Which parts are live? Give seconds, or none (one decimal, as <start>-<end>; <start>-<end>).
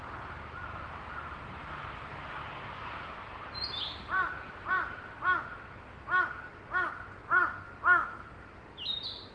5.1-9.3